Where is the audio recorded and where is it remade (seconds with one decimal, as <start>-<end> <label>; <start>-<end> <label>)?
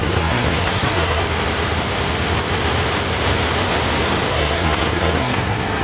0.0-1.2 remade; 1.2-4.3 recorded; 4.3-5.8 remade